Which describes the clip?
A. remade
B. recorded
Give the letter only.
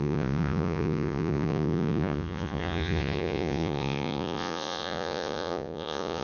A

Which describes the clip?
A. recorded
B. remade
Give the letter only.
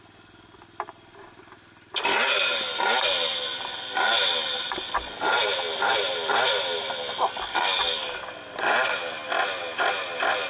A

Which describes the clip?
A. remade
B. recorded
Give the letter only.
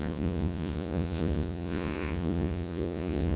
A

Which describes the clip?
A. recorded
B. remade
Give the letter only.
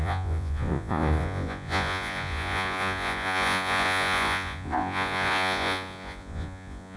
B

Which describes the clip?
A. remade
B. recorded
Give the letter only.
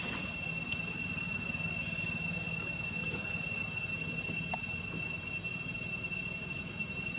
B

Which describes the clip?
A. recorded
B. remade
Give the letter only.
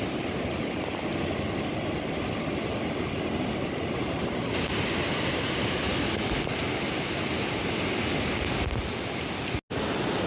A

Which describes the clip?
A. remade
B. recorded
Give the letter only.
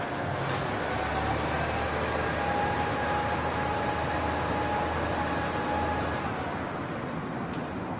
B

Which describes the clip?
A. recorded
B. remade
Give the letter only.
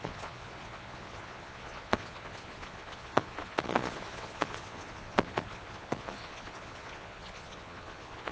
B